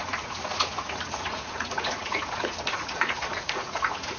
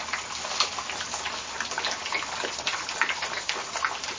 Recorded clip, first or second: second